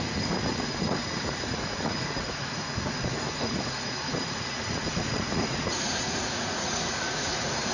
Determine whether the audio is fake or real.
fake